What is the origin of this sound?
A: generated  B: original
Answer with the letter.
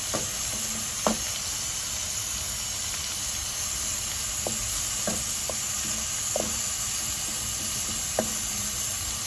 B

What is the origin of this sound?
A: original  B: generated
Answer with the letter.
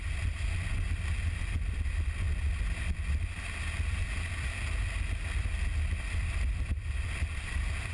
A